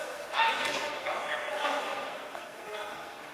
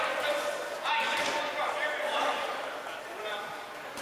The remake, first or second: first